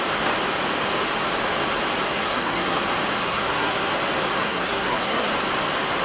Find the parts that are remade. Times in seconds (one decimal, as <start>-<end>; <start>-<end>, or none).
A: 2.1-2.8; 3.2-3.9; 4.4-5.3